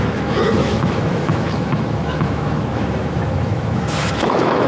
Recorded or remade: remade